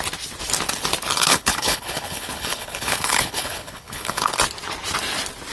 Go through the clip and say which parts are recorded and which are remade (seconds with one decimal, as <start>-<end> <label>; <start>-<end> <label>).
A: 0.0-1.1 recorded; 1.1-4.3 remade; 4.3-5.5 recorded